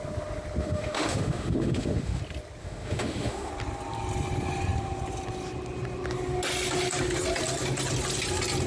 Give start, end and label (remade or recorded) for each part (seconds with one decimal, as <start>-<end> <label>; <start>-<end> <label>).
0.0-0.6 recorded; 0.6-2.2 remade; 2.2-2.6 recorded; 2.6-3.5 remade; 3.5-8.7 recorded